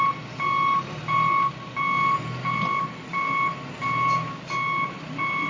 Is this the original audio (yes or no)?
yes